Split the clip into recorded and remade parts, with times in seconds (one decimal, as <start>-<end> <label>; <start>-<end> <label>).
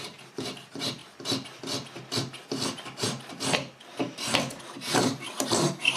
0.0-1.0 remade; 1.0-2.8 recorded; 2.8-6.0 remade